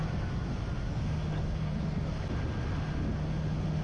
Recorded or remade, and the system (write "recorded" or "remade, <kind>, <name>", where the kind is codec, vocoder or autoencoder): recorded